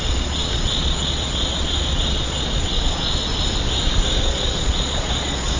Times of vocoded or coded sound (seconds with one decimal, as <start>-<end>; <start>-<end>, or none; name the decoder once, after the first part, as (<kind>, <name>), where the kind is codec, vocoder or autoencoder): 0.0-3.3 (vocoder, Vocos); 4.2-5.6